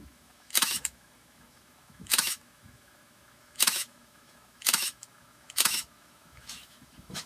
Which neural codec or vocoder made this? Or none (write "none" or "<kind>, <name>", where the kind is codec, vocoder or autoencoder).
autoencoder, DAC-VAE